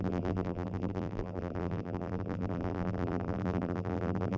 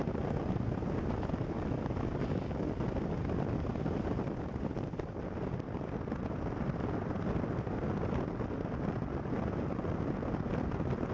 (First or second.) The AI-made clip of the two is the first